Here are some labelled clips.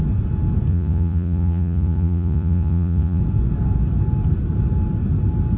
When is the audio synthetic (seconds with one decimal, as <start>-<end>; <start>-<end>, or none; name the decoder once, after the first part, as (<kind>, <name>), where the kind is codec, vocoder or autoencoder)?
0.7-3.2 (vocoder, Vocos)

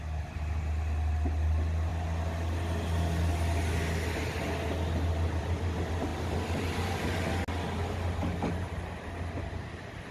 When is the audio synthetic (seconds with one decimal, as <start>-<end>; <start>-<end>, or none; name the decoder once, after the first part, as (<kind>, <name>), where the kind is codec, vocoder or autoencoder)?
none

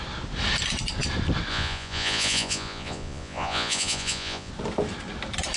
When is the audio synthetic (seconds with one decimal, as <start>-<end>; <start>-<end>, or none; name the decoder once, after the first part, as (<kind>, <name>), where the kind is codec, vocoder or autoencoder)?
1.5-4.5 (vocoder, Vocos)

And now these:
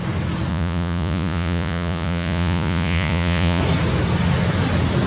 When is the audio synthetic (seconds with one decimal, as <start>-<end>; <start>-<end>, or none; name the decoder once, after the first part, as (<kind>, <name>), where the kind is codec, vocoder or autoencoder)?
0.5-3.6 (vocoder, Vocos)

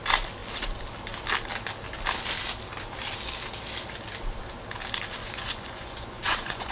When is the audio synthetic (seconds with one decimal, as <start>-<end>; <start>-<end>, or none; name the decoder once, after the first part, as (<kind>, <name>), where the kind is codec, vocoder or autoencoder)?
5.2-6.7 (vocoder, Vocos)